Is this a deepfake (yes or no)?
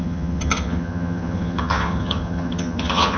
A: yes